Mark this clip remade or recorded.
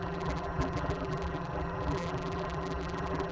remade